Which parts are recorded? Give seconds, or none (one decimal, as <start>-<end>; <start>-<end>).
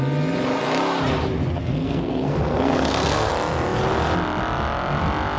0.0-1.6; 3.3-5.4